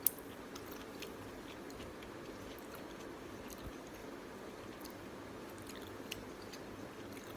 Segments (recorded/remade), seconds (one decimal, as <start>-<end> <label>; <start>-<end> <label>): 0.0-7.4 recorded